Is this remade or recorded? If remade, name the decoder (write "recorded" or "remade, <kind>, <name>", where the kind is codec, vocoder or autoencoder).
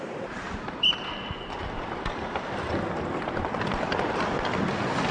recorded